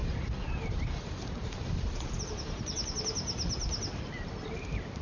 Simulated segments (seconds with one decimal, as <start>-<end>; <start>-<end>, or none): 0.0-2.8; 4.1-5.0